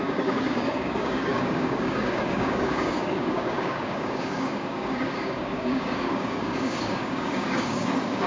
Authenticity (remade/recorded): remade